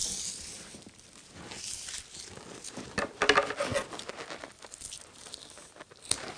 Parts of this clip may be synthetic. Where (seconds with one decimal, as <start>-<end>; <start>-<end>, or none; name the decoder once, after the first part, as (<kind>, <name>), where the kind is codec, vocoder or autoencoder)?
none